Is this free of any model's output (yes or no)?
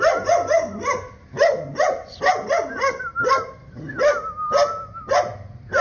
yes